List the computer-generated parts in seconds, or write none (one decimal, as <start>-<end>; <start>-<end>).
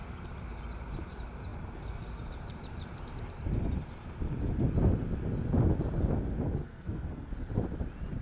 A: 6.6-7.3